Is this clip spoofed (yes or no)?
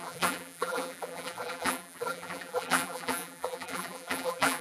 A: yes